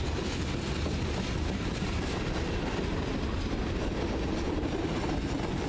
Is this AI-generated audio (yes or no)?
no